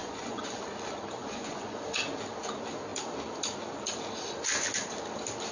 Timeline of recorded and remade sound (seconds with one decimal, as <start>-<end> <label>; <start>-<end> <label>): 0.0-0.6 remade; 0.6-1.2 recorded; 1.2-1.8 remade; 1.8-5.5 recorded